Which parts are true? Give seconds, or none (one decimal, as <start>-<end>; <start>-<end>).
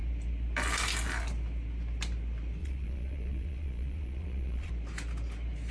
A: 0.0-2.6; 4.7-5.7